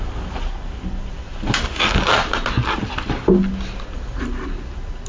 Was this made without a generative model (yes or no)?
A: yes